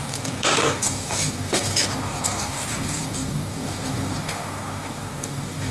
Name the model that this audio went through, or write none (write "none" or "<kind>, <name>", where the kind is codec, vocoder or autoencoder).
codec, DAC